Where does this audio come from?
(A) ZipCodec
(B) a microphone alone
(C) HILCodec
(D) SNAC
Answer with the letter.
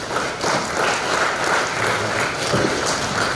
B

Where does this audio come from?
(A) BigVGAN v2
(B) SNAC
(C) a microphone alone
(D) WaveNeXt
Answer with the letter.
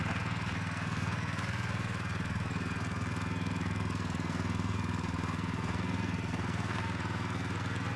B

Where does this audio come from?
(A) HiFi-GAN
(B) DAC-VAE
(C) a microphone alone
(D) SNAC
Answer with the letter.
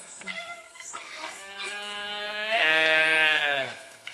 D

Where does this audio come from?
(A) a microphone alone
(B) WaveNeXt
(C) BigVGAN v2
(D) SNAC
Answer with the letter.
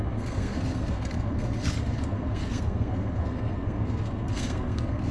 D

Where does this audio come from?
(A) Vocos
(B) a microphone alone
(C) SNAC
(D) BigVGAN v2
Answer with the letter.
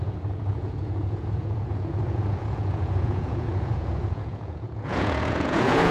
A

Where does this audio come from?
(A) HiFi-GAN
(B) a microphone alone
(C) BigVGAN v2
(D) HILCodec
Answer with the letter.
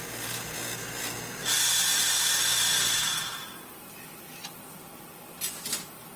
B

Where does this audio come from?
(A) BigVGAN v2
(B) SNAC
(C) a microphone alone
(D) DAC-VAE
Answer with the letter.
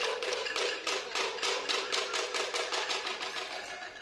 C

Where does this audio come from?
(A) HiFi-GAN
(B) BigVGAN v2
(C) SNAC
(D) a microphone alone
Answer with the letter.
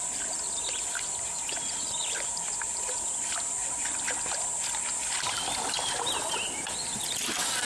D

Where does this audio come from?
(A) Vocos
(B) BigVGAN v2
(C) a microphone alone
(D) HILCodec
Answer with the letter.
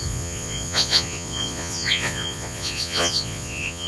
A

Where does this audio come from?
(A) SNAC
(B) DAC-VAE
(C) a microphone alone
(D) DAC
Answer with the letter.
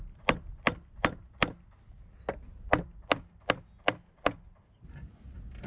C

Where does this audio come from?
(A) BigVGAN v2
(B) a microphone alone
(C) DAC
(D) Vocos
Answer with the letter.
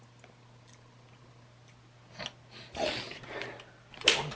B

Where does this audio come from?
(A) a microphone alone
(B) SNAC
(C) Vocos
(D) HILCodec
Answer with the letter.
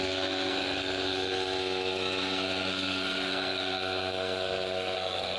B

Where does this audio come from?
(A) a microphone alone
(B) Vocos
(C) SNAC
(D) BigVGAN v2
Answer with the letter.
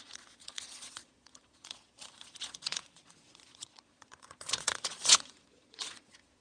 B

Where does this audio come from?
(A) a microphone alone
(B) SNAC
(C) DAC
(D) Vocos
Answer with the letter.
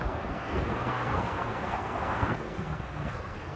B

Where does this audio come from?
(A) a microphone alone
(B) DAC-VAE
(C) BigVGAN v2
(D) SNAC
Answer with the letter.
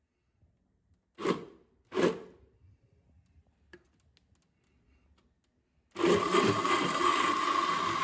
A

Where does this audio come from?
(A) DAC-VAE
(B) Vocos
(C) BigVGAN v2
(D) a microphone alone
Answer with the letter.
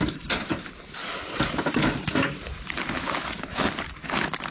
D